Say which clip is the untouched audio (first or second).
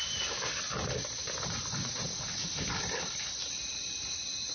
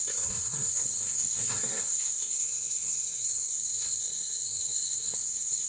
first